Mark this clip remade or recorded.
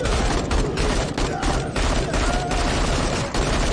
recorded